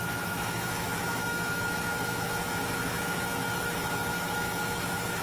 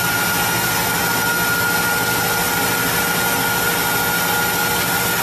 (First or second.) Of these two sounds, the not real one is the first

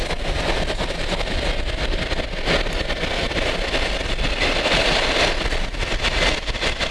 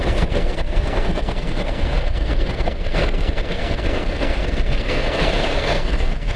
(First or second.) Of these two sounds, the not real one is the second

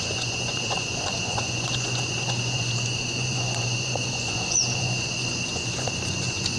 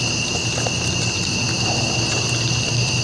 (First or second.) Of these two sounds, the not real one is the first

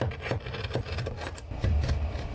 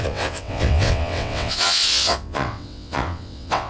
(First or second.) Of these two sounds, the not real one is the second